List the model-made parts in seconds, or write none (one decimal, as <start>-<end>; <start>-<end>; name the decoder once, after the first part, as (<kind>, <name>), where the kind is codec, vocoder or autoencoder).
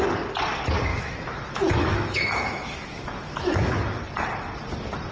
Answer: 0.9-4.0 (autoencoder, DAC-VAE)